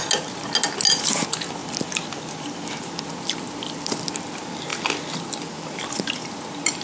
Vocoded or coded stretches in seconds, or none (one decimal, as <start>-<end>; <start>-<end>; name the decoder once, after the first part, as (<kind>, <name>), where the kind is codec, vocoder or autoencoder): 1.6-3.1 (vocoder, BigVGAN v2)